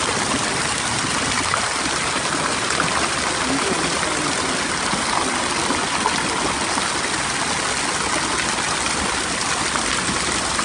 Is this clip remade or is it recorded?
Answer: recorded